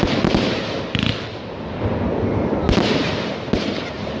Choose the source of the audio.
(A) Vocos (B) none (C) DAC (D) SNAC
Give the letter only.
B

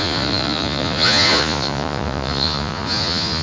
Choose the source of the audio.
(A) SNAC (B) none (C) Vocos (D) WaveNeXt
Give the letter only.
C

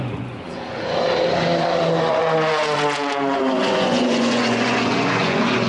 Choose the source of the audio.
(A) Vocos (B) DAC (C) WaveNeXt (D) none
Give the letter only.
A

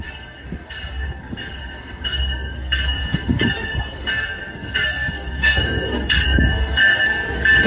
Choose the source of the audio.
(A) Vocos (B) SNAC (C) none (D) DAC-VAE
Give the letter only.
B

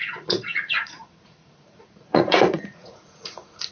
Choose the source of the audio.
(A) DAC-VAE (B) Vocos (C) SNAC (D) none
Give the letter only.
B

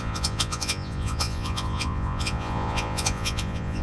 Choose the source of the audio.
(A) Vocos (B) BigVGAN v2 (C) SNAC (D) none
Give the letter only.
A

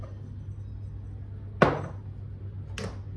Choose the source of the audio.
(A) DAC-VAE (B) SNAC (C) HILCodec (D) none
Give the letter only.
D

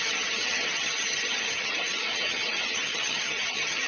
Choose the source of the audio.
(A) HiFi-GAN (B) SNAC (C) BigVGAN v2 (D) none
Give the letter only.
A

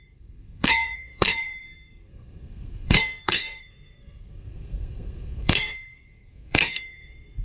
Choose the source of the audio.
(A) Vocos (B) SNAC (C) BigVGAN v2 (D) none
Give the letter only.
B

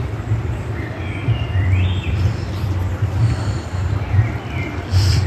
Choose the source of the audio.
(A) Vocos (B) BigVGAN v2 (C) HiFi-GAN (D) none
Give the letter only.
B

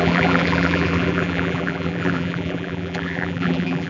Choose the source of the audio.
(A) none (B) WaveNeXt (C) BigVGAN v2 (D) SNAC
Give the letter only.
C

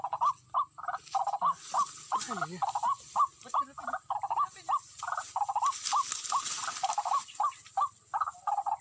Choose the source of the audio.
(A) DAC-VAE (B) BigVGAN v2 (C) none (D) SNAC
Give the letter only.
C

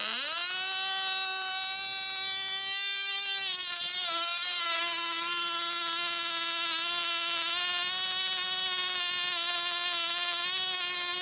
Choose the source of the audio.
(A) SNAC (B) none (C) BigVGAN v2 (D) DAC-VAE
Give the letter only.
B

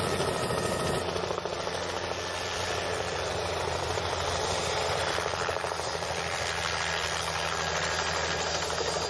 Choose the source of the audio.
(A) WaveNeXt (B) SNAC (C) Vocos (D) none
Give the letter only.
D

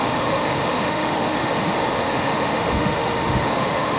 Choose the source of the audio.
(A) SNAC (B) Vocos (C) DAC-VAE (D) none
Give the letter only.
C